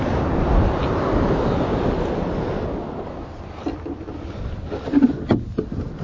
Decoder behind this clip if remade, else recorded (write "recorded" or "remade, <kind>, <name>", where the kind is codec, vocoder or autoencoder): recorded